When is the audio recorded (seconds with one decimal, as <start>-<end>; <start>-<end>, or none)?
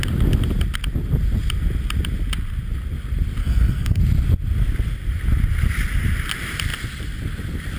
0.0-3.4; 4.0-7.8